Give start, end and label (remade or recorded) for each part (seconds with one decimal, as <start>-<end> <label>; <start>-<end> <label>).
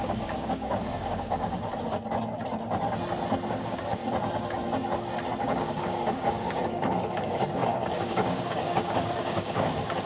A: 0.0-1.7 remade; 1.7-3.5 recorded; 3.5-4.0 remade; 4.0-5.4 recorded; 5.4-10.1 remade